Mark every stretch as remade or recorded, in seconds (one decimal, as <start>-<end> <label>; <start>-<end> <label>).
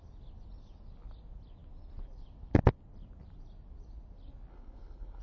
0.0-4.5 recorded; 4.5-5.2 remade